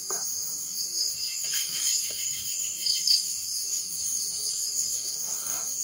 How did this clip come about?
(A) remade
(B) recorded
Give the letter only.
A